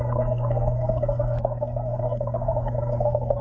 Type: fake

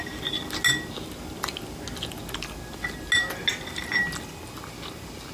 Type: real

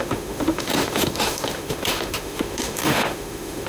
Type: fake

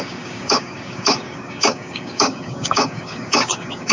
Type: fake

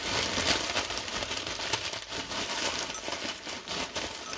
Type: real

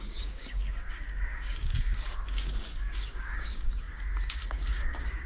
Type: fake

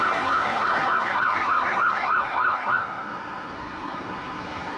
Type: fake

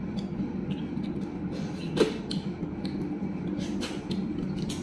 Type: real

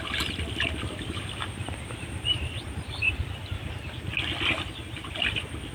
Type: real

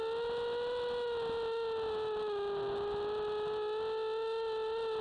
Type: real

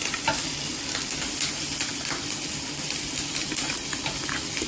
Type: real